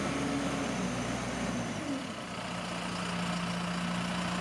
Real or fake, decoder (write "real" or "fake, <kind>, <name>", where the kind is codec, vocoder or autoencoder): real